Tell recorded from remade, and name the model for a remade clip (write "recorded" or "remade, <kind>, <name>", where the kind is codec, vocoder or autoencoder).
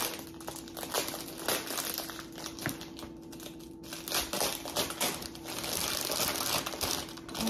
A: recorded